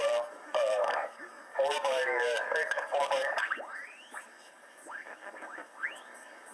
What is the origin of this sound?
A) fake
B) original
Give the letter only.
A